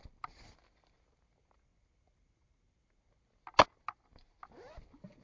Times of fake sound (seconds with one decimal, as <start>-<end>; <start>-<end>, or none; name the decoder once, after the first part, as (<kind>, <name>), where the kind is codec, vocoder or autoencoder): none